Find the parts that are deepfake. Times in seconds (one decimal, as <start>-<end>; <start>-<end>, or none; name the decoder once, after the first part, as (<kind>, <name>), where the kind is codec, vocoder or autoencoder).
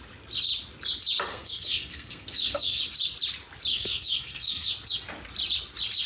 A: 1.3-2.8 (codec, SNAC); 3.7-4.7